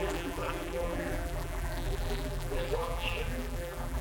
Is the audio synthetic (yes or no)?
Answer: yes